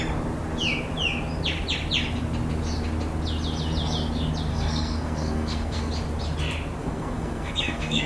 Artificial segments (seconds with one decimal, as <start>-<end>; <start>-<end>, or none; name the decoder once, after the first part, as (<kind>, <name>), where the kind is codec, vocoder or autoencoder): 4.5-5.9 (codec, SNAC); 6.8-8.1